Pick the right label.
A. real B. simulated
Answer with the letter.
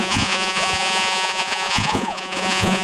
B